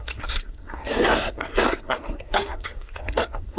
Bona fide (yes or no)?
no